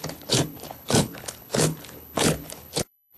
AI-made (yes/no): yes